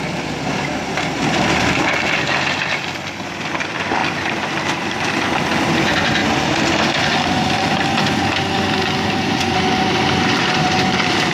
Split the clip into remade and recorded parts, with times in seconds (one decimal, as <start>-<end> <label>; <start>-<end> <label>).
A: 0.0-11.3 remade